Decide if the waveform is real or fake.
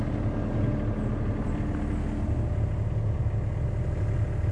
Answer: real